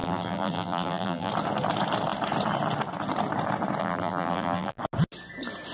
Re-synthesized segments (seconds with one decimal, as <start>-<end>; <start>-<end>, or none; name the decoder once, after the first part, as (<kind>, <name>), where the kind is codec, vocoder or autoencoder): 0.0-1.3 (vocoder, BigVGAN v2); 3.8-4.8